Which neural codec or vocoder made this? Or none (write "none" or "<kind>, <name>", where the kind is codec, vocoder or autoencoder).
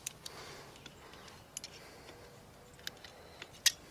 none